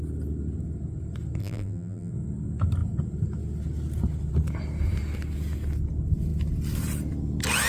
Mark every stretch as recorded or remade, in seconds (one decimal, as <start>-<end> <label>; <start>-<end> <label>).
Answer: 0.0-1.4 recorded; 1.4-2.1 remade; 2.1-7.7 recorded